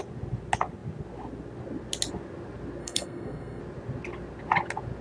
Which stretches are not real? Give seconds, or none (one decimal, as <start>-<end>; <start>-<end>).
2.8-3.6